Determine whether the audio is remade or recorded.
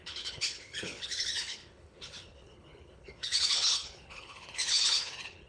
remade